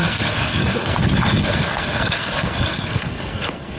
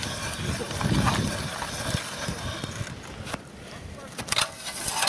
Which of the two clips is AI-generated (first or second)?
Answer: first